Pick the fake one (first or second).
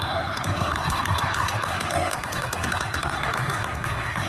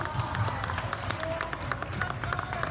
first